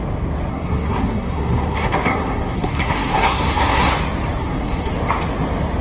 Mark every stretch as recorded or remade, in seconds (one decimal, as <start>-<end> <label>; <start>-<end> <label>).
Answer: 0.0-0.5 recorded; 0.5-3.9 remade; 3.9-4.4 recorded; 4.4-4.9 remade; 4.9-5.8 recorded